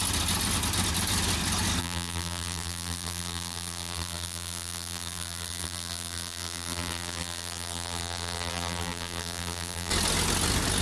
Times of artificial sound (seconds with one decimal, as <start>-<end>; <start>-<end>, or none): 1.8-9.9